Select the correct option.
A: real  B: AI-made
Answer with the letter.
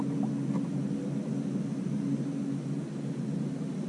A